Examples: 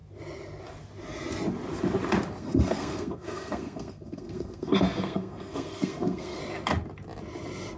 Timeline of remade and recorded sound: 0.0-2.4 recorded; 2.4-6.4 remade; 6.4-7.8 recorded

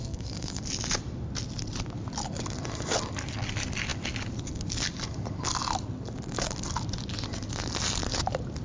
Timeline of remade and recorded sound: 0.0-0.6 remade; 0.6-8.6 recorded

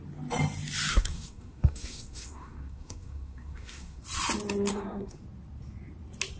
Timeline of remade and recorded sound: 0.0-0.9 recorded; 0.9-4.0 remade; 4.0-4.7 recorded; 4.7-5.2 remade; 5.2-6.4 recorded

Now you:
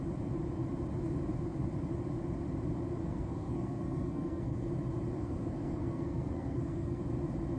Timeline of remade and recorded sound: 0.0-3.0 recorded; 3.0-4.7 remade; 4.7-5.2 recorded; 5.2-7.0 remade; 7.0-7.6 recorded